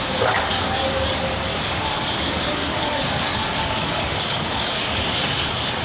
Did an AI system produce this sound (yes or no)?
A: yes